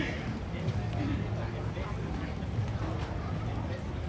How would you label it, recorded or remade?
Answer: recorded